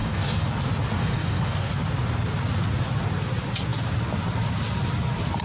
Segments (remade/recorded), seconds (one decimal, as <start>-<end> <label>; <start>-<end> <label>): 0.0-0.5 remade; 0.5-1.0 recorded; 1.0-1.7 remade; 1.7-5.4 recorded